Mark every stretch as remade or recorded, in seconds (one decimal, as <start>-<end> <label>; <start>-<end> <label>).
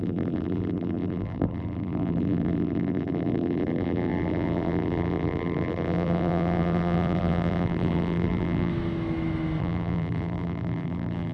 0.0-8.7 remade; 8.7-9.6 recorded; 9.6-11.3 remade